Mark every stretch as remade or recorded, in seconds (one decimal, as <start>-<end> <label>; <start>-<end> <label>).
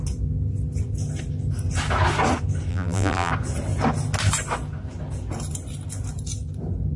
0.0-2.7 recorded; 2.7-3.3 remade; 3.3-7.0 recorded